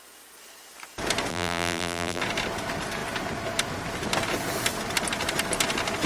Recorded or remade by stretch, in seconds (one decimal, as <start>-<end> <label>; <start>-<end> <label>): 0.0-1.3 recorded; 1.3-2.2 remade; 2.2-6.1 recorded